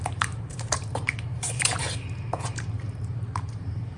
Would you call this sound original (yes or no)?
no